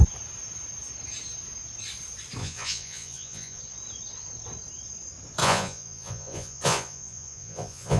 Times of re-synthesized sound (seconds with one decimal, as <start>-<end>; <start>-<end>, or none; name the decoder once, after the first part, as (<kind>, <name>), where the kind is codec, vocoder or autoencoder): 2.4-3.6 (vocoder, Vocos); 5.4-8.0